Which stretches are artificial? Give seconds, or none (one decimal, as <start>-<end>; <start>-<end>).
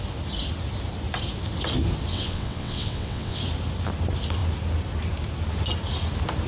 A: 2.1-3.4